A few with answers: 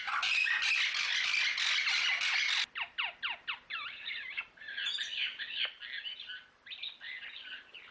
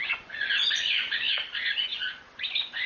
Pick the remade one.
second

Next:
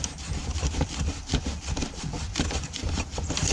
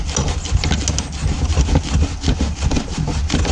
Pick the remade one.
first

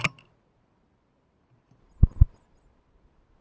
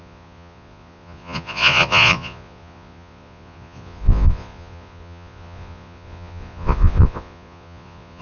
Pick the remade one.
second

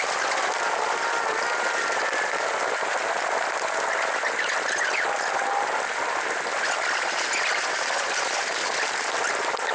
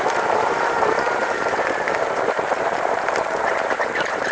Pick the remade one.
second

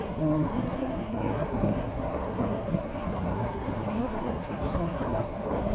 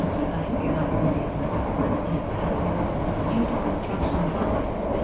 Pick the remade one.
first